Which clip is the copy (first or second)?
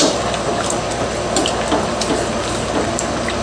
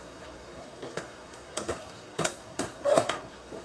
second